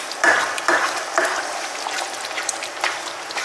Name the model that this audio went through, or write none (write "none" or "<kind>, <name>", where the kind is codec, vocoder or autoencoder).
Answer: none